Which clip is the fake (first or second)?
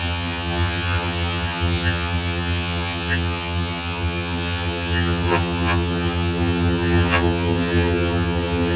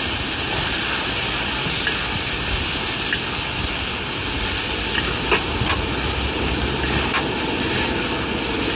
first